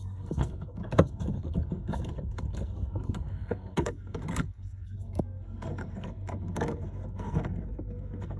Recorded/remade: remade